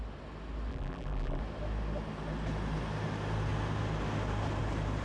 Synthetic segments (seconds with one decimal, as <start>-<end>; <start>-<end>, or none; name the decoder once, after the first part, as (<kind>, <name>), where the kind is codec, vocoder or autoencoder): 0.7-1.4 (vocoder, BigVGAN v2)